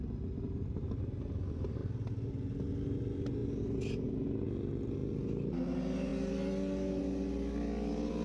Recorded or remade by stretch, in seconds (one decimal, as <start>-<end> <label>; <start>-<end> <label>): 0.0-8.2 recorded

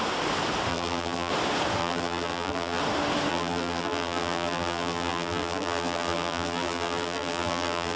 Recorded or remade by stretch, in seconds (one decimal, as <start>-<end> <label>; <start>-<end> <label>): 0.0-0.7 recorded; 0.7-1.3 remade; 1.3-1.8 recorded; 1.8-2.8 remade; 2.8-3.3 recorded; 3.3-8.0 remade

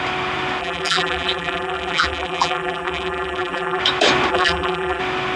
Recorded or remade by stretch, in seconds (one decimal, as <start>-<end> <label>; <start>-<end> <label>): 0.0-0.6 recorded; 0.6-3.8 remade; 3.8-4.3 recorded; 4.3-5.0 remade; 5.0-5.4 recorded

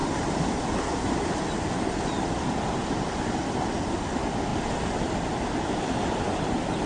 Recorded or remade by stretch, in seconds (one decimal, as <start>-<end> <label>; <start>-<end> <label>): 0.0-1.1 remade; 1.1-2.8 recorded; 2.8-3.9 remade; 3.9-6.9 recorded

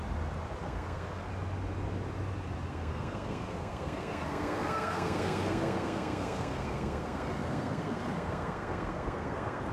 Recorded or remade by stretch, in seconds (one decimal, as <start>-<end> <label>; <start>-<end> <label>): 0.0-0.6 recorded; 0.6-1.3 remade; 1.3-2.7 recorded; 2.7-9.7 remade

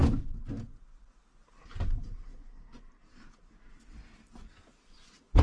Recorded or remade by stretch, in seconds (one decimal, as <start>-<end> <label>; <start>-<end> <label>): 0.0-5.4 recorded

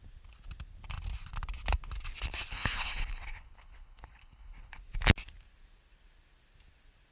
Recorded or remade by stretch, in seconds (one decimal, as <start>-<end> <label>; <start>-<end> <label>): 0.0-2.5 recorded; 2.5-4.8 remade; 4.8-7.1 recorded

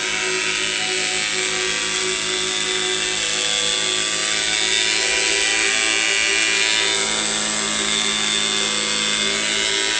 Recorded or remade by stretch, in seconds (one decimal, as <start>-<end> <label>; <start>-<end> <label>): 0.0-10.0 recorded